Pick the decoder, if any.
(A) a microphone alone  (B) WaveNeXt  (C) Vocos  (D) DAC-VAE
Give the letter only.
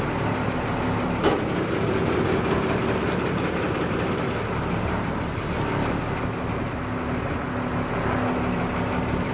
A